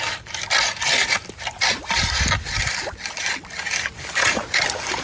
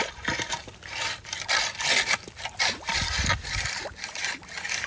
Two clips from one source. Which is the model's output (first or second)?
second